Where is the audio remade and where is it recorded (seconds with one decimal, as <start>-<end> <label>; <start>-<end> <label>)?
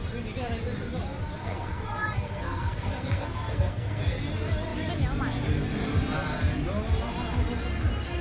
0.0-1.4 recorded; 1.4-4.2 remade; 4.2-8.2 recorded